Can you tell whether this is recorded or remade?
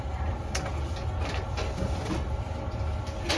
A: recorded